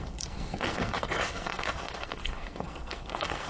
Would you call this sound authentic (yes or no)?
no